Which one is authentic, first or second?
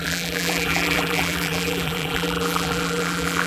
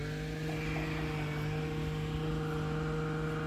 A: second